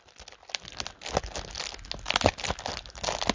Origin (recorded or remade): recorded